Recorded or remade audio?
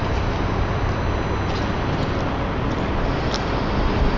recorded